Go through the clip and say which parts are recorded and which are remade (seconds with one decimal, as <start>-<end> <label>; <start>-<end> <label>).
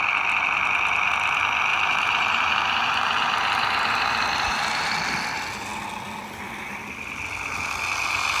0.0-1.7 recorded; 1.7-4.9 remade; 4.9-8.4 recorded